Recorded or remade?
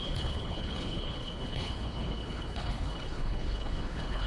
remade